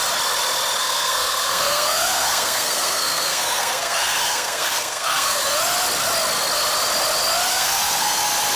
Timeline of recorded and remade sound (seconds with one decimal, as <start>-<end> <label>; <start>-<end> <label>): 0.0-0.8 recorded; 0.8-5.4 remade; 5.4-7.5 recorded; 7.5-8.2 remade; 8.2-8.6 recorded